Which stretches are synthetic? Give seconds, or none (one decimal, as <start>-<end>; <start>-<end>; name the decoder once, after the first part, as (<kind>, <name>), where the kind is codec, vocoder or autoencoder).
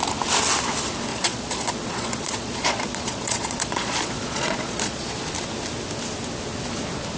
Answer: 1.1-5.1 (vocoder, Vocos)